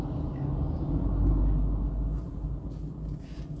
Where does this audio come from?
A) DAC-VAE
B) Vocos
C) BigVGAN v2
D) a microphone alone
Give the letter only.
D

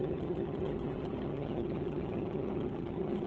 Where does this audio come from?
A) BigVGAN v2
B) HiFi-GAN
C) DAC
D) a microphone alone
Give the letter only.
B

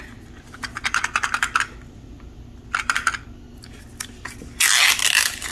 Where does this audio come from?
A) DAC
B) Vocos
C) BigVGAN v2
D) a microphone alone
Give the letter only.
D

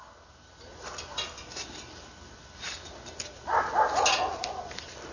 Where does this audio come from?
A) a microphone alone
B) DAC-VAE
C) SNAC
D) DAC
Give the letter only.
A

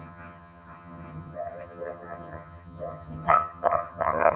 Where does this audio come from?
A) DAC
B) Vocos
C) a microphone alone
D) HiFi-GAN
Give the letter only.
D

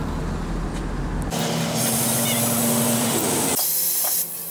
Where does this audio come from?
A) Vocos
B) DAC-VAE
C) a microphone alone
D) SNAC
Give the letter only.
C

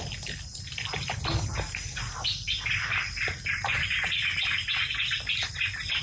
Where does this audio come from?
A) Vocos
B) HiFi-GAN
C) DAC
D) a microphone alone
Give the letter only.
D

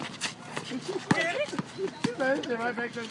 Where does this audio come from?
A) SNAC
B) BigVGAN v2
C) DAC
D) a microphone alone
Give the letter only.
D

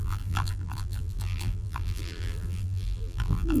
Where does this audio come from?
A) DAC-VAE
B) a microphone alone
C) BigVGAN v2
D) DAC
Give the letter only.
C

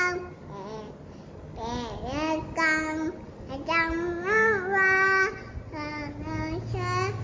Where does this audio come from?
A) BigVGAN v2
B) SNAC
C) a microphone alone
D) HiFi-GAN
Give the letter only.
C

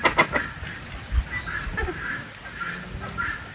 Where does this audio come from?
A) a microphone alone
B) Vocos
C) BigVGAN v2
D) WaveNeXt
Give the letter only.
A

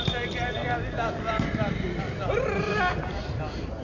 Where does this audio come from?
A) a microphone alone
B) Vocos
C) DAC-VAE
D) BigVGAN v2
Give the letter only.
A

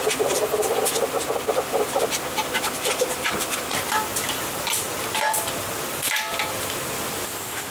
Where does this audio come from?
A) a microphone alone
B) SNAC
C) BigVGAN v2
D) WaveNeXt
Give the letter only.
C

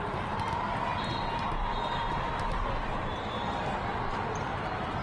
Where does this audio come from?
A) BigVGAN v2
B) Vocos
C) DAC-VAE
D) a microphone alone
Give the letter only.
D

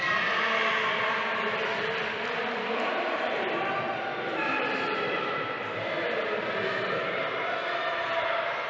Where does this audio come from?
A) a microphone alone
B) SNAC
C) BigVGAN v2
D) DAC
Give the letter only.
A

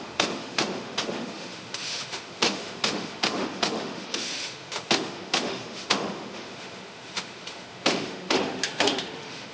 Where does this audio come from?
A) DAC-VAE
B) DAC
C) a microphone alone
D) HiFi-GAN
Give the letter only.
A